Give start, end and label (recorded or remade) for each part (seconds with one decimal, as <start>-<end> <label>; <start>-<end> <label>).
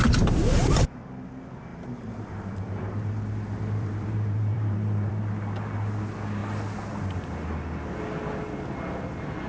0.0-1.0 remade; 1.0-1.7 recorded; 1.7-5.1 remade; 5.1-9.5 recorded